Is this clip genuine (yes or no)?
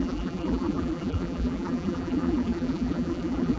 no